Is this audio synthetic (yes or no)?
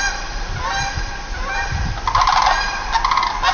no